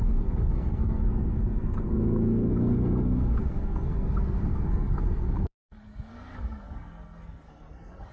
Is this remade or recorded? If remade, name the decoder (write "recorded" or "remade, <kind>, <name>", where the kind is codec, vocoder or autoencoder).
remade, codec, SNAC